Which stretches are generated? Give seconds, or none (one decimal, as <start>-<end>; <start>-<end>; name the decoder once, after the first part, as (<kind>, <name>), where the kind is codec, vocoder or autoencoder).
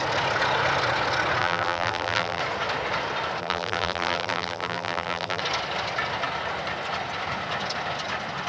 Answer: 1.4-2.4 (vocoder, BigVGAN v2); 3.4-5.4